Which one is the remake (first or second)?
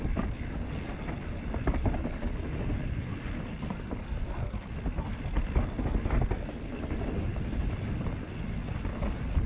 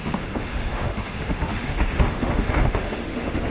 second